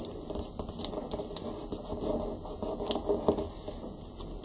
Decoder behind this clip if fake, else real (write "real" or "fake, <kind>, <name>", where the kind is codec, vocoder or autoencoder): real